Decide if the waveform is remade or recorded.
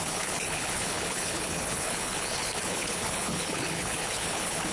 remade